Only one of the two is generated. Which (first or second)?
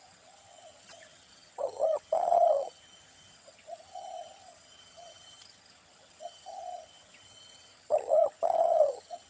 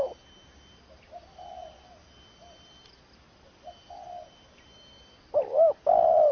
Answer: first